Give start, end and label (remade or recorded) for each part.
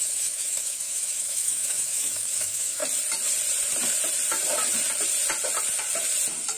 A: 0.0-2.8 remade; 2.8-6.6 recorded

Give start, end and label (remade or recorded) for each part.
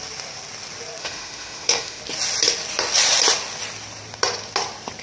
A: 0.0-1.0 recorded; 1.0-2.0 remade; 2.0-5.0 recorded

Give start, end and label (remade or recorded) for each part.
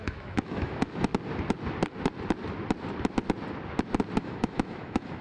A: 0.0-1.1 remade; 1.1-4.2 recorded; 4.2-5.2 remade